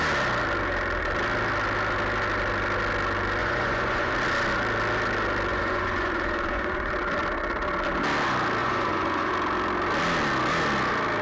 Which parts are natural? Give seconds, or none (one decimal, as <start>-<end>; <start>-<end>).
0.0-3.4; 4.1-5.5; 6.9-8.6; 9.3-11.2